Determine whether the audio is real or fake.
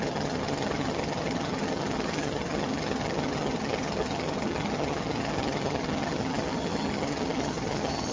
fake